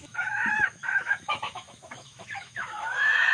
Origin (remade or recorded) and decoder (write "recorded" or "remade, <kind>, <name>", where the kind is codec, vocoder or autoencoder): remade, autoencoder, DAC-VAE